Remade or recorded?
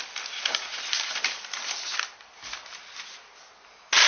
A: recorded